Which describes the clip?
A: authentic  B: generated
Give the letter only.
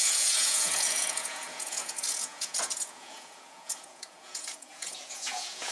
B